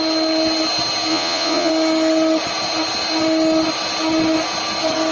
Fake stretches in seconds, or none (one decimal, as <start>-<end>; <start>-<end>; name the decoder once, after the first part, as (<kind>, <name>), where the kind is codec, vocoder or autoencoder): 1.1-1.7 (vocoder, Vocos)